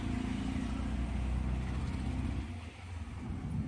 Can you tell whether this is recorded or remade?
recorded